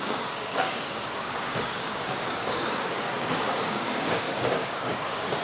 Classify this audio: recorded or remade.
remade